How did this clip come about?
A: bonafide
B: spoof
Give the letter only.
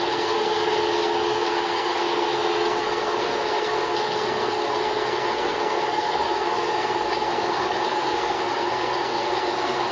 B